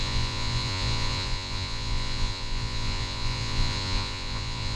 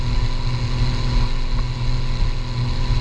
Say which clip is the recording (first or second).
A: second